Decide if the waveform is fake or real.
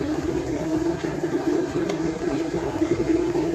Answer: fake